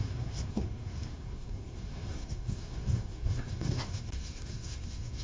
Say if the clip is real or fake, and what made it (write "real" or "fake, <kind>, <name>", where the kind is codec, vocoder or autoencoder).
fake, codec, SNAC